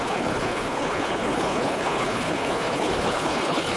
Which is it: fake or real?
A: fake